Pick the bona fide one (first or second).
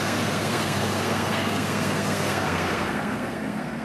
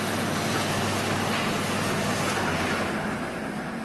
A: second